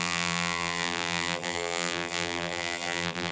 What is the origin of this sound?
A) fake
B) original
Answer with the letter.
A